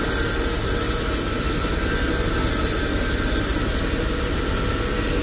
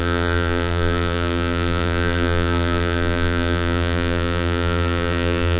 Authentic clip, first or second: first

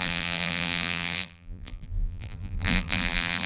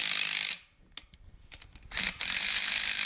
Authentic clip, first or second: second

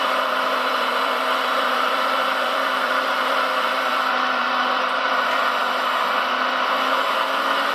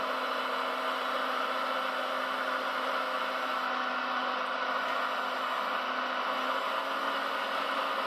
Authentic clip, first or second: second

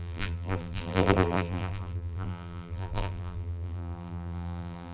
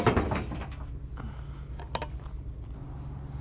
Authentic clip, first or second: second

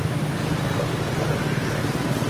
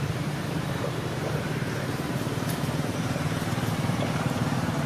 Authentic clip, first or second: first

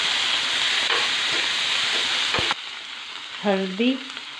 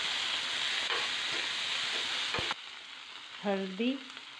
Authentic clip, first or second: second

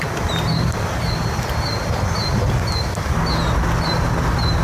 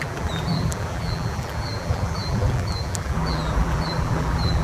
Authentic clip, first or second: first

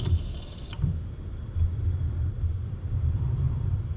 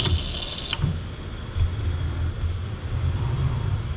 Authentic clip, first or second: second